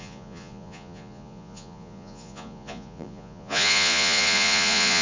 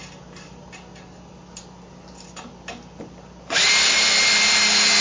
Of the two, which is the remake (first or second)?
first